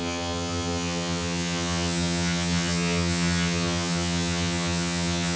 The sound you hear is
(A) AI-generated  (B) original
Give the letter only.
A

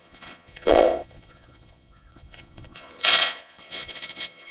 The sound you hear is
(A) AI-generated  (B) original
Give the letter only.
A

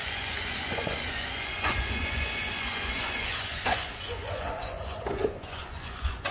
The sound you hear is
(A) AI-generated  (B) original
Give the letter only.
A